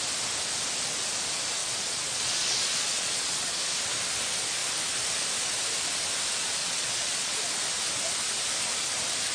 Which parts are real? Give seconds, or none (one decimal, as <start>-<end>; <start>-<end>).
0.0-1.6; 3.6-6.6; 7.4-9.3